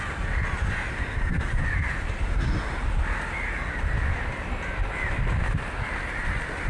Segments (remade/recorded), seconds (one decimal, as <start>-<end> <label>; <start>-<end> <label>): 0.0-0.9 recorded; 0.9-1.5 remade; 1.5-2.3 recorded; 2.3-2.8 remade; 2.8-6.7 recorded